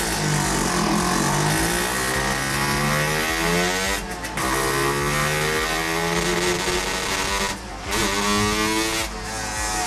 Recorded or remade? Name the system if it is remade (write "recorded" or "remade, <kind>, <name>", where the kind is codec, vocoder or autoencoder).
recorded